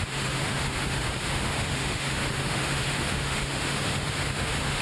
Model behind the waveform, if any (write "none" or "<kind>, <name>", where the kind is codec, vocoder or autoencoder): autoencoder, DAC-VAE